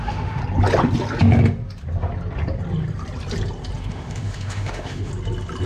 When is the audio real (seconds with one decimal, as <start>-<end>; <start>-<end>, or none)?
0.4-3.8; 5.1-5.7